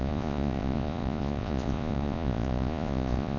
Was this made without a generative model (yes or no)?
no